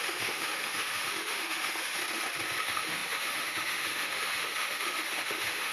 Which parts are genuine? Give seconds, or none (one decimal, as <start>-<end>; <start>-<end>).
2.0-2.6